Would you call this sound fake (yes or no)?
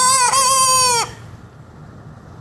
no